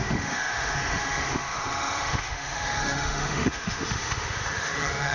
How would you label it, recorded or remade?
remade